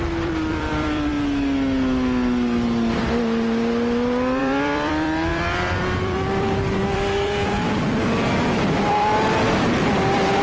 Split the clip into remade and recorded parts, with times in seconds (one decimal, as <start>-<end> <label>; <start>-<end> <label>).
0.0-1.1 remade; 1.1-4.4 recorded; 4.4-10.4 remade